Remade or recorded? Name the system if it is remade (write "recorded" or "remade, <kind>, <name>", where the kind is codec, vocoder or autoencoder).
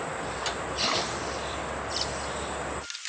recorded